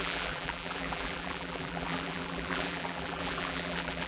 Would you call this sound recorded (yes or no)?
no